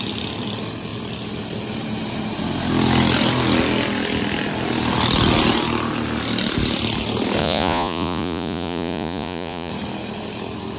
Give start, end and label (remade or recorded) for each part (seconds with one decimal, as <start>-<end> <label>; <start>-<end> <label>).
0.0-7.4 recorded; 7.4-9.7 remade; 9.7-10.8 recorded